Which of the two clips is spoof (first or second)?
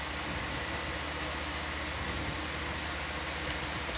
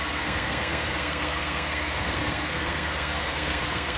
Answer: second